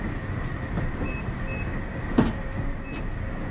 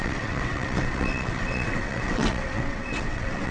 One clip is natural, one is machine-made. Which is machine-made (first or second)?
second